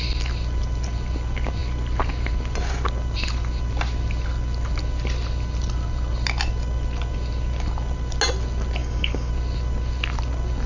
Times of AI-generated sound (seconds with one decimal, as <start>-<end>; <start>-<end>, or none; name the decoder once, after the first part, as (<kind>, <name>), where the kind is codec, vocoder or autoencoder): 8.8-9.3 (codec, DAC)